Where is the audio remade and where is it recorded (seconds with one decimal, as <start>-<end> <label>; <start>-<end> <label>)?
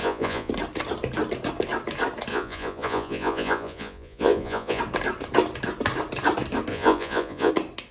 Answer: 0.0-0.5 remade; 0.5-2.3 recorded; 2.3-4.8 remade; 4.8-6.7 recorded; 6.7-7.5 remade; 7.5-7.9 recorded